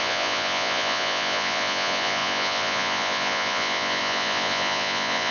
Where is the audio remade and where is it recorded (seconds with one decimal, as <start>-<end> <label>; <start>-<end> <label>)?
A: 0.0-5.3 remade

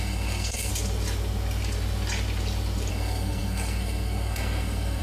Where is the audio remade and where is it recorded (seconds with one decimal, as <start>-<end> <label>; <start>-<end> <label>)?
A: 0.0-0.7 remade; 0.7-2.9 recorded; 2.9-5.0 remade

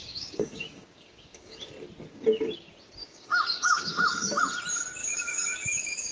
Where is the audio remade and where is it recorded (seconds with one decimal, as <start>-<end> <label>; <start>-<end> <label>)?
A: 0.0-1.7 remade; 1.7-3.0 recorded; 3.0-4.4 remade; 4.4-5.0 recorded; 5.0-6.1 remade